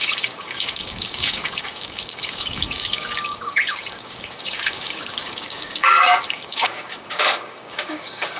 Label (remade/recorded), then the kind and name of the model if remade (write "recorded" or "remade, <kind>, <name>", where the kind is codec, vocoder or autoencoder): remade, codec, DAC